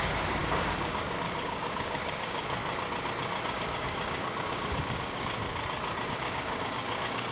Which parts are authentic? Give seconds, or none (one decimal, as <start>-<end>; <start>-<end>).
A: 2.6-3.5; 5.4-6.1